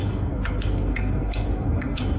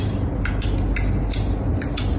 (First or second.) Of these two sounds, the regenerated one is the first